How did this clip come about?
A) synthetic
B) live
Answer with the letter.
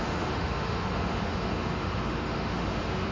A